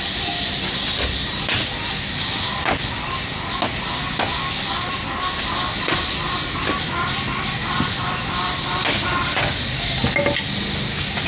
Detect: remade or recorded recorded